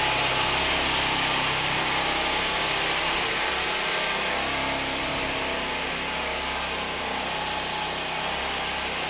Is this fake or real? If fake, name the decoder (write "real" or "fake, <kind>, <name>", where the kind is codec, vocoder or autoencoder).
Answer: real